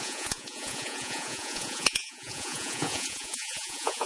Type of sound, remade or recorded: remade